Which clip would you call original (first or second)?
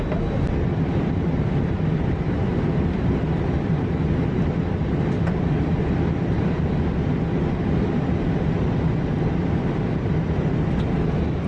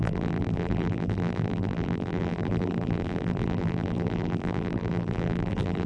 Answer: first